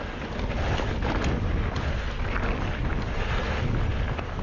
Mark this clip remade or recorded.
recorded